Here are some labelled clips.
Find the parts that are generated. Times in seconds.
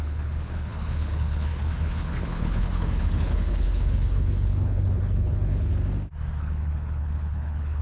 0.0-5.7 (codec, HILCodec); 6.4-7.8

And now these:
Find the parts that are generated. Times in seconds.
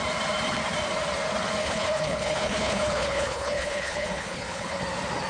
1.6-4.8 (codec, HILCodec)